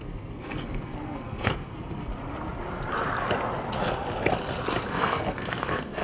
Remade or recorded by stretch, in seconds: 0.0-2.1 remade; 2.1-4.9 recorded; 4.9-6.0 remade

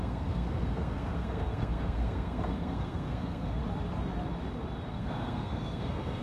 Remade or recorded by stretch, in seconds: 0.0-3.6 remade; 3.6-4.9 recorded; 4.9-6.2 remade